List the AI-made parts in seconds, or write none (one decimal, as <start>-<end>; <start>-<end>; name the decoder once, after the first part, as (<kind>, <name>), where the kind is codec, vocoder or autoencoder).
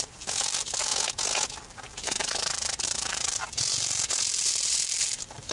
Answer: 0.0-0.9 (vocoder, BigVGAN v2); 1.6-5.5